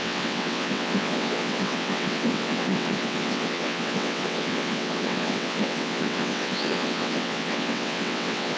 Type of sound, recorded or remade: remade